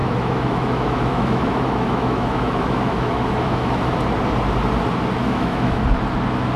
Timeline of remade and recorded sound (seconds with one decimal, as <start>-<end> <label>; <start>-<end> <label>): 0.0-4.0 remade; 4.0-5.2 recorded; 5.2-5.8 remade; 5.8-6.6 recorded